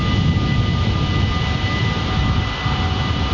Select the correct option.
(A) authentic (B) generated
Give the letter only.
A